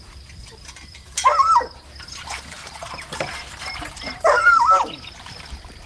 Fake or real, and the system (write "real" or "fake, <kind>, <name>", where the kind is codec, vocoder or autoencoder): fake, vocoder, BigVGAN v2